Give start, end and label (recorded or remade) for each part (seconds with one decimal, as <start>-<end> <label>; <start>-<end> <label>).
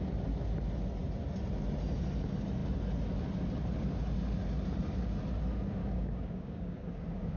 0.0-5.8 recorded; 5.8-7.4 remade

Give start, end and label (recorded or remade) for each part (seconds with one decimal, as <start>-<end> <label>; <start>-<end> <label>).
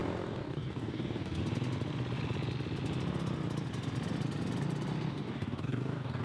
0.0-1.4 remade; 1.4-5.1 recorded; 5.1-6.2 remade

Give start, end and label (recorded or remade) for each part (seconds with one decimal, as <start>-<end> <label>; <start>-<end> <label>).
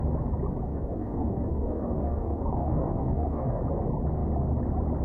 0.0-0.7 recorded; 0.7-3.6 remade; 3.6-5.0 recorded